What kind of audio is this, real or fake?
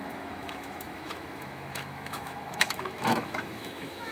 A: fake